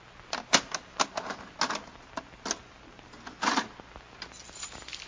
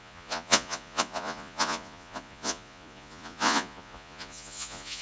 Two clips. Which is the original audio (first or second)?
first